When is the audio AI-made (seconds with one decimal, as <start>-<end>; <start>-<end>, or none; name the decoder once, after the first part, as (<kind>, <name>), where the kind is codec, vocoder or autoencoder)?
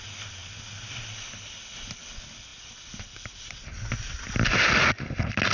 none